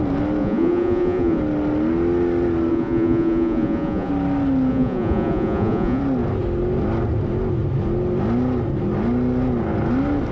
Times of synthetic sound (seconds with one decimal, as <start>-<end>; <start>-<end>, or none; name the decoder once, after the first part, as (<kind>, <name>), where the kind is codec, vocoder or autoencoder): 0.4-1.4 (vocoder, Vocos); 2.7-4.1; 4.7-6.0